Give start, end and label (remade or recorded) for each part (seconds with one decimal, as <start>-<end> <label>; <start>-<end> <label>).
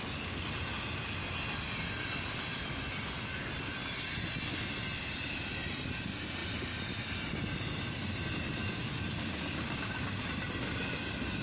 0.0-9.2 recorded; 9.2-10.2 remade; 10.2-11.4 recorded